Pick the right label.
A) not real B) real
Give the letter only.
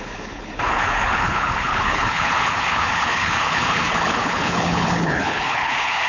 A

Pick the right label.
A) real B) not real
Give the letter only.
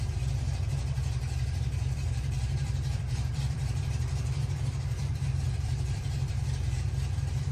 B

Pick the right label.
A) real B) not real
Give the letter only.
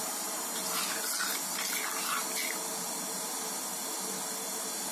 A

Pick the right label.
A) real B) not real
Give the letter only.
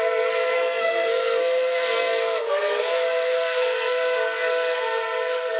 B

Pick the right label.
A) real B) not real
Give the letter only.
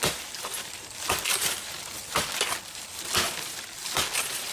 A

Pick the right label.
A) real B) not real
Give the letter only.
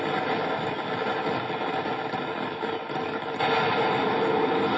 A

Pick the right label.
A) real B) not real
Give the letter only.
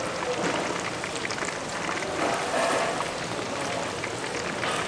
A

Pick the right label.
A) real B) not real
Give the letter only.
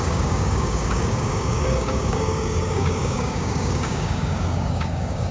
B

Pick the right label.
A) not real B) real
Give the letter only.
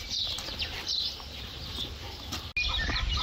B